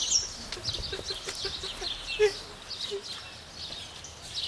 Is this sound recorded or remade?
recorded